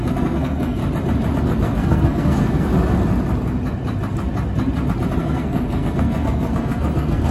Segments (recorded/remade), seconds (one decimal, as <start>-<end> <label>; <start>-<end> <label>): 0.0-0.8 remade; 0.8-1.4 recorded; 1.4-2.7 remade; 2.7-5.2 recorded; 5.2-7.3 remade